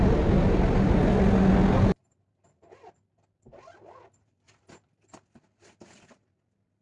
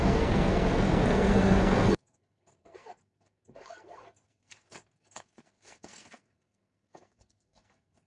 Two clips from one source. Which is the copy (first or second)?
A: second